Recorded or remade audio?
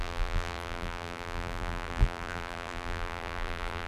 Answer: remade